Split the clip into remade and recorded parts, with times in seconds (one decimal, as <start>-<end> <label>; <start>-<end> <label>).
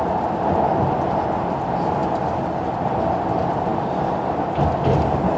0.0-5.4 recorded